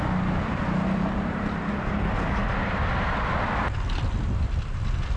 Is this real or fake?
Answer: real